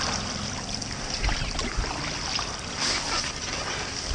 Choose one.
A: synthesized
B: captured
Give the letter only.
B